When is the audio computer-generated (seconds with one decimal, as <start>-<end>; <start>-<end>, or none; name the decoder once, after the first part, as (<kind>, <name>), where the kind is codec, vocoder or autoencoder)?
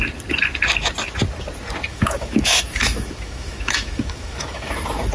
1.9-5.1 (autoencoder, DAC-VAE)